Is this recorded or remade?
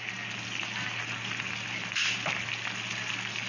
recorded